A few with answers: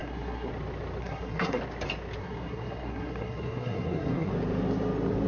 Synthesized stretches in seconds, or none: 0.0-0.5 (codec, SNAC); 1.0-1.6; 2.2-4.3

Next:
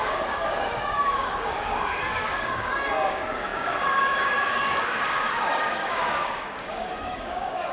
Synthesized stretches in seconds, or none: 0.0-7.7 (codec, DAC)

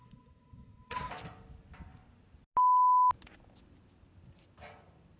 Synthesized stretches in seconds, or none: 0.0-1.1 (codec, SNAC)

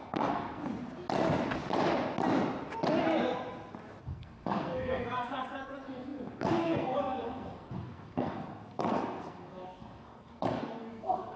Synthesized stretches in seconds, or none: 0.0-0.6 (codec, SNAC); 4.0-11.4

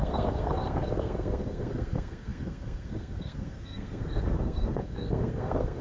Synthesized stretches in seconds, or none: 0.0-5.8 (codec, SNAC)